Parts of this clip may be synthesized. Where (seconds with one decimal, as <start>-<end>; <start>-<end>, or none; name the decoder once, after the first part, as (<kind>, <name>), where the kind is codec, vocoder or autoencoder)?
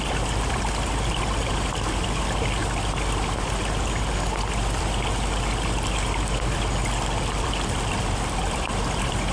0.0-2.6 (vocoder, BigVGAN v2); 7.2-9.3